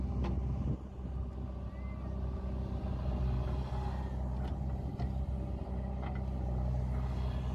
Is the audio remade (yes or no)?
no